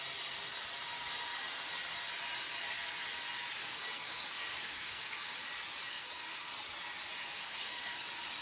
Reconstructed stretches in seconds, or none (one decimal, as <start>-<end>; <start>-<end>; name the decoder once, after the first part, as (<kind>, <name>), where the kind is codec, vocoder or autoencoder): 3.6-5.3 (codec, SNAC); 5.9-6.5; 7.2-8.0